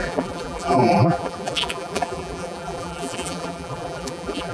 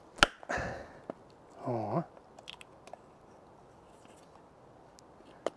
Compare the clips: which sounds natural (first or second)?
second